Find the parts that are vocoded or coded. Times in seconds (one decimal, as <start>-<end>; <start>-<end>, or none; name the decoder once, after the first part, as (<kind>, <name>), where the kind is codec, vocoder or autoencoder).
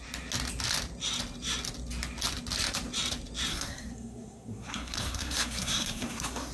3.5-6.5 (codec, SNAC)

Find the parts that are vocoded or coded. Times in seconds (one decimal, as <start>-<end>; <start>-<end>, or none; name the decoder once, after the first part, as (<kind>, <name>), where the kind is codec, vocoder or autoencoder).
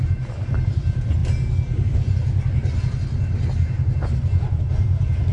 none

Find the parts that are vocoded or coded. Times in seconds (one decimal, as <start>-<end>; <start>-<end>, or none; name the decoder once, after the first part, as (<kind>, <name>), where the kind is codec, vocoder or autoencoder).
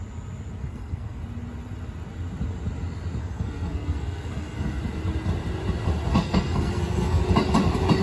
0.6-1.2 (codec, SNAC); 3.2-4.8; 6.1-7.2